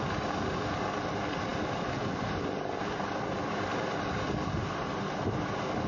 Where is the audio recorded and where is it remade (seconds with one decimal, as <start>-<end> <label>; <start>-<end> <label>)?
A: 0.0-5.9 recorded